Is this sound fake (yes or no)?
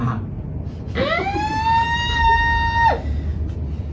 no